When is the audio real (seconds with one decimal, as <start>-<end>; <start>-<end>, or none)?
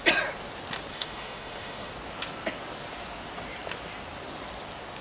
0.0-0.9; 1.9-5.0